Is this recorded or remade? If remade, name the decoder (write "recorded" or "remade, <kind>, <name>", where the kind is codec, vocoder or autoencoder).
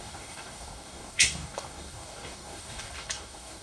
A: remade, codec, DAC